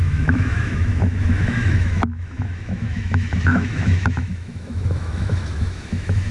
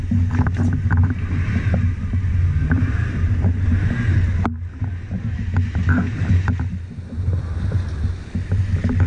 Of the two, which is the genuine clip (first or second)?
second